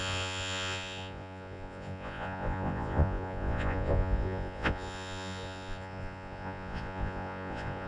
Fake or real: fake